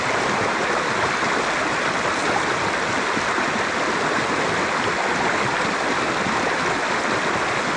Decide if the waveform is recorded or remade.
recorded